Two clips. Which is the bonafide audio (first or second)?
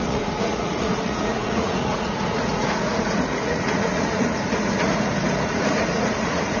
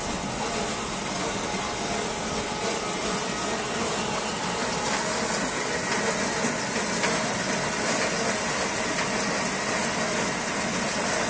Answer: second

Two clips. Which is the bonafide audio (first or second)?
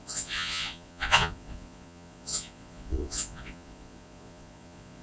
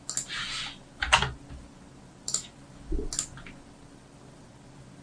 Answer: second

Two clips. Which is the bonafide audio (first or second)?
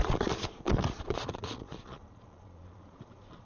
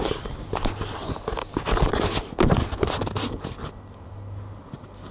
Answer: second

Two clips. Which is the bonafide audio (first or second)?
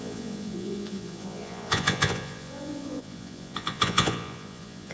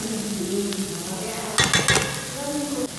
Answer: second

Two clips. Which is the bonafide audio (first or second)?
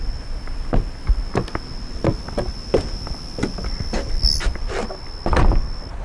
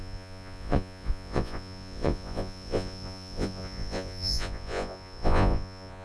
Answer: first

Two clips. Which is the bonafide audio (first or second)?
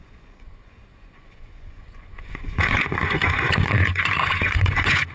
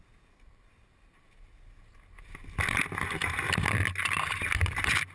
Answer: second